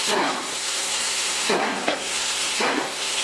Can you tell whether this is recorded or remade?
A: remade